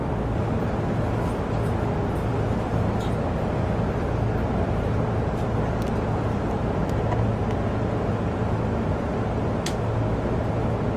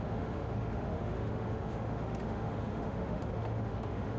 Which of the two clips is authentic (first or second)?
first